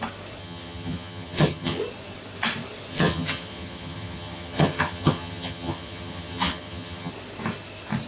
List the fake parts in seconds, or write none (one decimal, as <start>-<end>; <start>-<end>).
0.4-1.8; 2.9-7.1